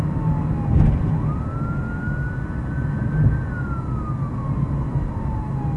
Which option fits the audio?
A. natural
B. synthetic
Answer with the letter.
A